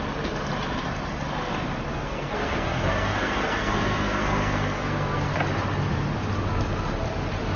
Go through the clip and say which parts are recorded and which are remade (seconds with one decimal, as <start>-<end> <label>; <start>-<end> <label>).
0.0-1.9 recorded; 1.9-5.3 remade; 5.3-7.6 recorded